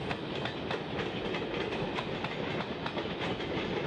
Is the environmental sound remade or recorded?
recorded